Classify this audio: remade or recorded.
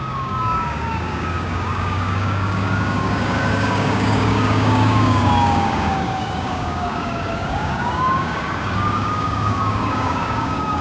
remade